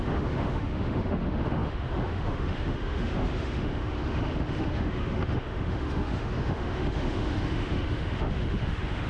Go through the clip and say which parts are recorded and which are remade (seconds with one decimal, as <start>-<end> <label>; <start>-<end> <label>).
0.0-9.1 remade